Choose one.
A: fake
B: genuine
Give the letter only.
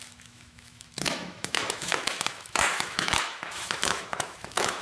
A